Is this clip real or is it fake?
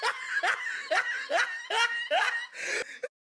real